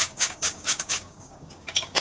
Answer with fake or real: fake